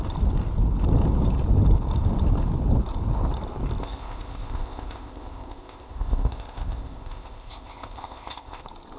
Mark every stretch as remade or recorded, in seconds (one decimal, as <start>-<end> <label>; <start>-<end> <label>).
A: 0.0-3.8 recorded; 3.8-8.6 remade; 8.6-9.0 recorded